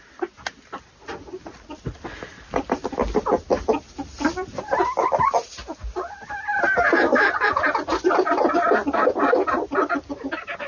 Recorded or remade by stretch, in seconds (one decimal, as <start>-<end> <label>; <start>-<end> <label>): 0.0-10.7 recorded